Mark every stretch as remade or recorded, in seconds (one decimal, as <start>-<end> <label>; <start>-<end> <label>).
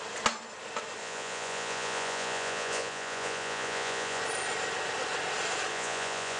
0.0-1.0 recorded; 1.0-4.2 remade; 4.2-5.7 recorded; 5.7-6.4 remade